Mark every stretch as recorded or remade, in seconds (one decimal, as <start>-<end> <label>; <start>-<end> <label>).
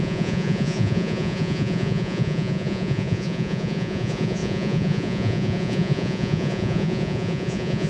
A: 0.0-7.9 remade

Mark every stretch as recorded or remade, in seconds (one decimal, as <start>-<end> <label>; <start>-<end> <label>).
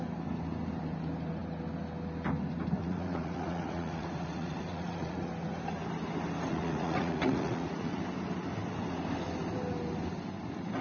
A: 0.0-2.8 recorded; 2.8-5.3 remade; 5.3-6.5 recorded; 6.5-8.0 remade; 8.0-10.8 recorded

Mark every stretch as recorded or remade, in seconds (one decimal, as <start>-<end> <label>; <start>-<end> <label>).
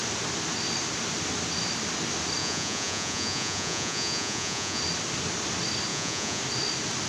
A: 0.0-2.4 recorded; 2.4-4.8 remade; 4.8-5.9 recorded; 5.9-6.4 remade; 6.4-7.1 recorded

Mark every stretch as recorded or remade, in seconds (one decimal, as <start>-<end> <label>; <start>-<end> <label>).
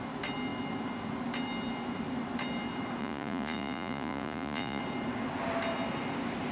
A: 0.0-3.0 recorded; 3.0-4.8 remade; 4.8-6.5 recorded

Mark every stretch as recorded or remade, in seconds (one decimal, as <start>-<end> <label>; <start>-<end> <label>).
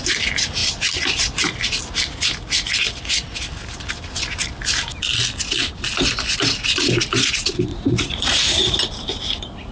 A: 0.0-7.7 recorded; 7.7-8.8 remade; 8.8-9.7 recorded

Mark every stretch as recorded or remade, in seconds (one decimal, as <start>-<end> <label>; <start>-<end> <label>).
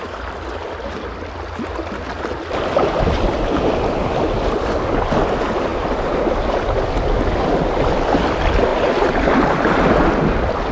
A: 0.0-10.7 recorded